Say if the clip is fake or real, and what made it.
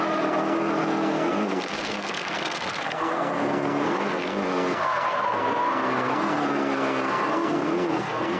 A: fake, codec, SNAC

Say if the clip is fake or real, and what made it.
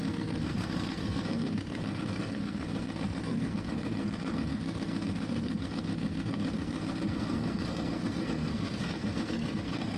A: fake, codec, SNAC